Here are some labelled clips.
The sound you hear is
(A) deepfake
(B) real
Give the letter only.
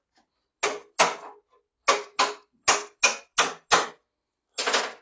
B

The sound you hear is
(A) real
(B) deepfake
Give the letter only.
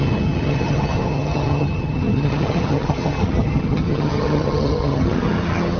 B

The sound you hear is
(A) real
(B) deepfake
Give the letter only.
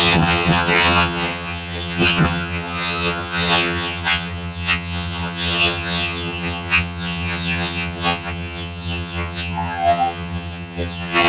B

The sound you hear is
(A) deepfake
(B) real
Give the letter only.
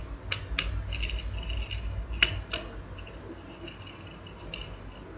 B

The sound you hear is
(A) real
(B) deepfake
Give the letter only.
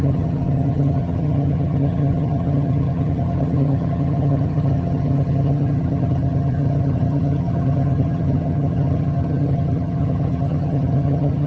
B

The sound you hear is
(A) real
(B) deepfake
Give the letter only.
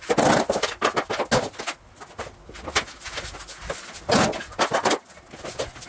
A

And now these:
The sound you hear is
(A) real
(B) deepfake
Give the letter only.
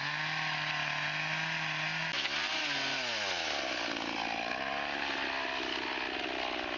A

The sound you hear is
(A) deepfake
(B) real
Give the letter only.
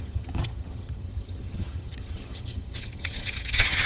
A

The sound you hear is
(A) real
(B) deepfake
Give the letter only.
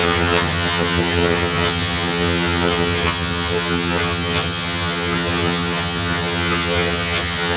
B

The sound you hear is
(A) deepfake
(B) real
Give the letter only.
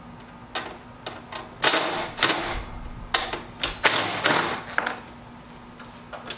B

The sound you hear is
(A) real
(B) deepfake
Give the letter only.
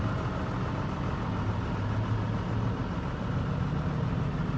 A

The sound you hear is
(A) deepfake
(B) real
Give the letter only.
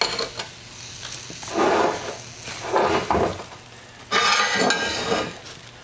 B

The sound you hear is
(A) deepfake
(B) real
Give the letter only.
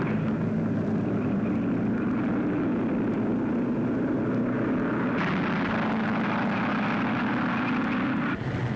B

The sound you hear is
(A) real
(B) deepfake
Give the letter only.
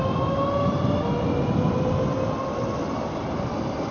A